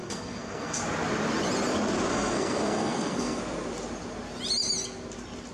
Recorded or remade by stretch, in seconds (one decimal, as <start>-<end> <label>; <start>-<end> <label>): 0.0-0.8 remade; 0.8-2.1 recorded; 2.1-3.4 remade; 3.4-5.5 recorded